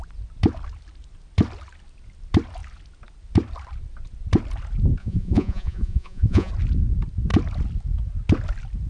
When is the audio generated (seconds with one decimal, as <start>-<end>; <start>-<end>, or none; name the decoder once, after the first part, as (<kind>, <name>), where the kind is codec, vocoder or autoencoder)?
5.0-6.5 (vocoder, Vocos)

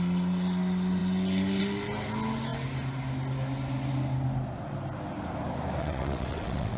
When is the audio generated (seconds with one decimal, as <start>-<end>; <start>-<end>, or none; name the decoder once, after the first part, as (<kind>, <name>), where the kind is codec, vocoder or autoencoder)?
5.8-6.8 (vocoder, WaveNeXt)

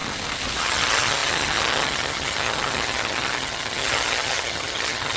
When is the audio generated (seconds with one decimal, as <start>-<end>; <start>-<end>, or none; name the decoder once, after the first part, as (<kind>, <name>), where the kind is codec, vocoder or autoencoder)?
0.6-5.2 (vocoder, HiFi-GAN)

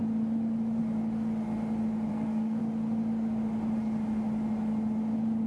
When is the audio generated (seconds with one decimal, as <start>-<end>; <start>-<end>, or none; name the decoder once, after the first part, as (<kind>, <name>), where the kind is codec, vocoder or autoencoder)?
2.1-2.6 (codec, SNAC)